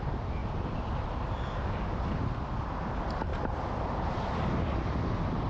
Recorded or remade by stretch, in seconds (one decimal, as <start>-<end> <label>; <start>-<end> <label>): 0.0-5.5 recorded